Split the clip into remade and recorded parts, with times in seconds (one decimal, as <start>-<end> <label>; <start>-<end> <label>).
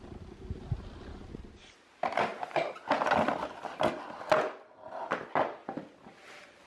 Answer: 0.0-6.7 recorded